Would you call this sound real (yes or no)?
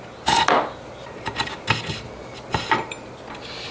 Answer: yes